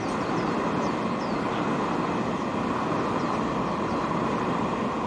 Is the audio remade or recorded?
recorded